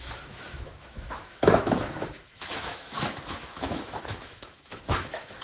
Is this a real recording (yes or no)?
no